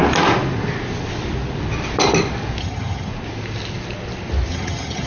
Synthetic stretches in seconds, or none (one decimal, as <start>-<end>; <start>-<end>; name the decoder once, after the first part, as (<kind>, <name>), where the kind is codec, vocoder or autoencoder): 2.6-3.1 (vocoder, HiFi-GAN); 4.5-5.1